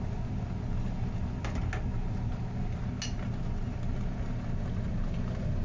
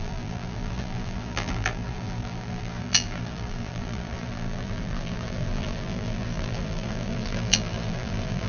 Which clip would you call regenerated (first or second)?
second